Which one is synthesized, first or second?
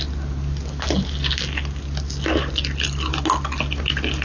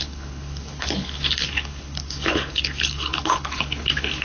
second